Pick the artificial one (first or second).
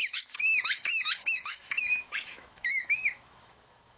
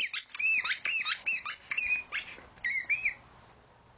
first